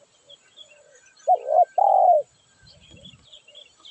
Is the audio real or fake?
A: fake